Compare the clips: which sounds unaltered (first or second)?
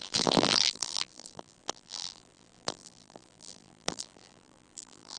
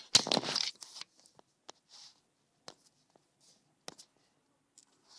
second